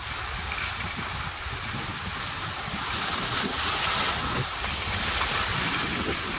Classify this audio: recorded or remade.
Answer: recorded